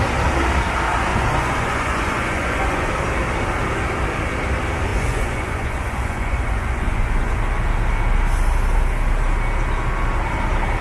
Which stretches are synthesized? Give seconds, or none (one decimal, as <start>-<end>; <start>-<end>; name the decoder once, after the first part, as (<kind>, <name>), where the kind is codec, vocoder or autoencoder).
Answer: 1.1-2.9 (vocoder, Vocos); 4.9-7.4